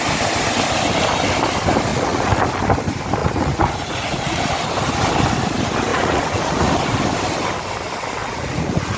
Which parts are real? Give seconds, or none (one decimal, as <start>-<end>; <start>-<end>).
0.0-1.9; 2.4-3.2; 4.4-5.9; 6.7-8.2